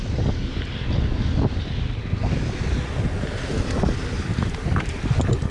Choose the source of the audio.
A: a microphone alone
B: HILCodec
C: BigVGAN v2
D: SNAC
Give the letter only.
A